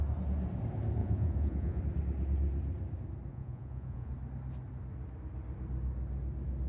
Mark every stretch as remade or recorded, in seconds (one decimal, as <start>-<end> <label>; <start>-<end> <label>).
0.0-1.0 recorded; 1.0-1.8 remade; 1.8-3.3 recorded; 3.3-4.1 remade; 4.1-6.7 recorded